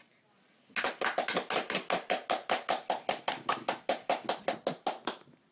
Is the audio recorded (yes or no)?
yes